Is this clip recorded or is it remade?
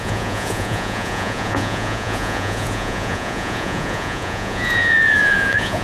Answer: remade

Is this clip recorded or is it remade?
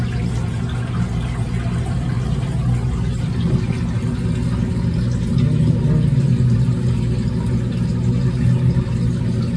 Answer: recorded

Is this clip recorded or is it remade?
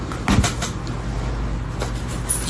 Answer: recorded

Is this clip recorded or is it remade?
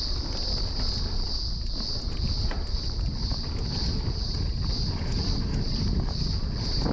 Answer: recorded